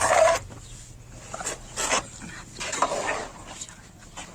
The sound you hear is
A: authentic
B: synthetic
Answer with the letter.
A